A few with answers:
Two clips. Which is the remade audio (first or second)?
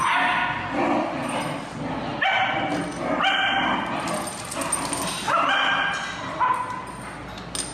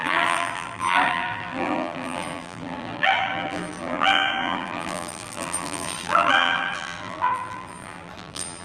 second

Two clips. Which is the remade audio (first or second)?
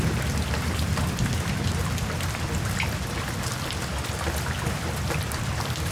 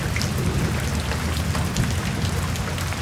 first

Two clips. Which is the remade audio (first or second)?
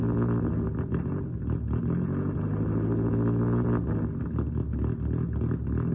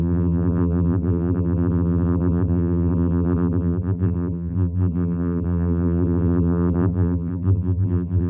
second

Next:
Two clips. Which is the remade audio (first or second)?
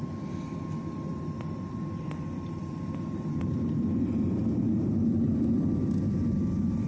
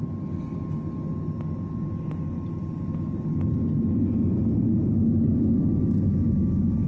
first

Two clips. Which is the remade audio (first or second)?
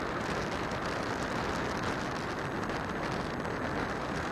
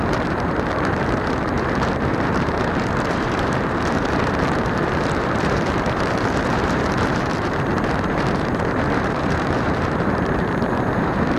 second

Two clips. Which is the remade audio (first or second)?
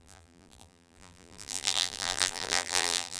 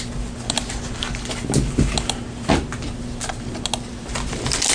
first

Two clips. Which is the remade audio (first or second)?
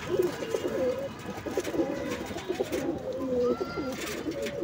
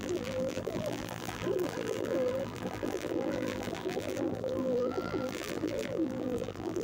second